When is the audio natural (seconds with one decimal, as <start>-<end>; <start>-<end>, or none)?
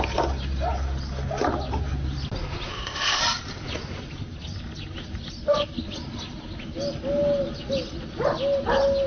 0.0-2.7; 3.2-9.1